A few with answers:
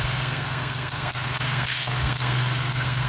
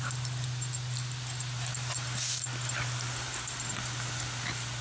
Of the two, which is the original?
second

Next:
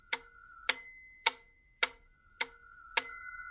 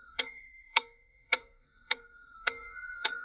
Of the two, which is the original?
first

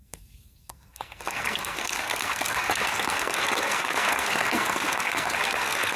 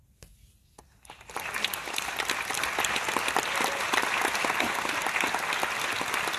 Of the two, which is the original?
second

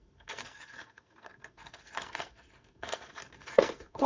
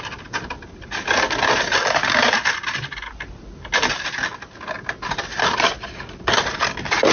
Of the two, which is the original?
second